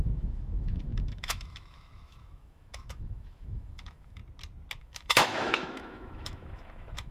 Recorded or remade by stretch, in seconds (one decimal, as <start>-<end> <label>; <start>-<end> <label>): 0.0-4.2 remade; 4.2-4.8 recorded; 4.8-7.1 remade